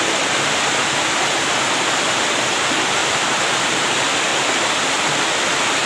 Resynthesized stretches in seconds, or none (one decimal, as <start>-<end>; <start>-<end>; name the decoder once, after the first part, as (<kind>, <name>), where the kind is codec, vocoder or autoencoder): 3.0-3.9 (vocoder, BigVGAN v2)